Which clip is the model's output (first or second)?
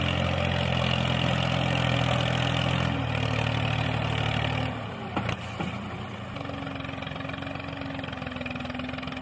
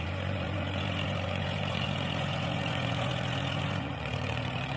second